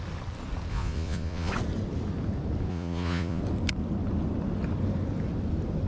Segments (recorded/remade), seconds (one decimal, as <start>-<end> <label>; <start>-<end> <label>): 0.0-0.7 recorded; 0.7-1.5 remade; 1.5-2.7 recorded; 2.7-3.4 remade; 3.4-5.9 recorded